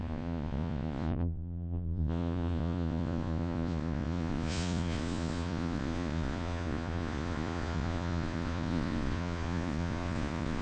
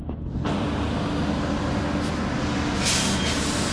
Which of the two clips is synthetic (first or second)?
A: first